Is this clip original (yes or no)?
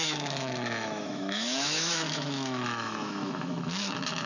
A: no